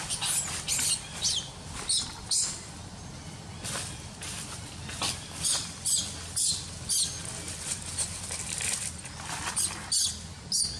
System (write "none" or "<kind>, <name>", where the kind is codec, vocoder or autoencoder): none